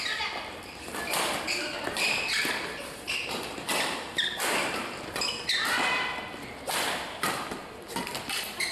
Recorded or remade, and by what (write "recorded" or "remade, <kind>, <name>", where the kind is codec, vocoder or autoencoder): recorded